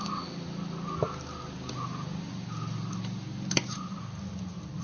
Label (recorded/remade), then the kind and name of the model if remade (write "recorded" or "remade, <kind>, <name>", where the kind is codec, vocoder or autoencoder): recorded